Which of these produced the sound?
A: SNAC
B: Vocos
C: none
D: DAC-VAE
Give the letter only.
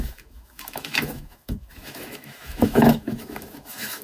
D